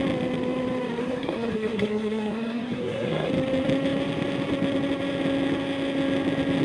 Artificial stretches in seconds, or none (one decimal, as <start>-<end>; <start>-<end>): 1.0-3.3